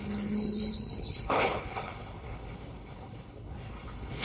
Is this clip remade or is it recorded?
remade